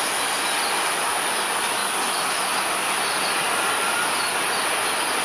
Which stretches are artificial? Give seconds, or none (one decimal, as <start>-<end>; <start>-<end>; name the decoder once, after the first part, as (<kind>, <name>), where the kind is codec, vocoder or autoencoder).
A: none